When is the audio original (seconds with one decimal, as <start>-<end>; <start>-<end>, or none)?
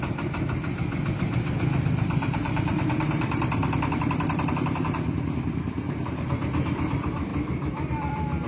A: none